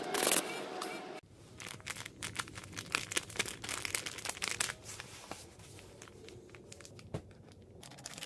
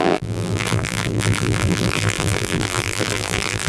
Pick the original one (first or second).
first